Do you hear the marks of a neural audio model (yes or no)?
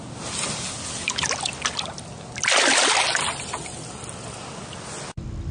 no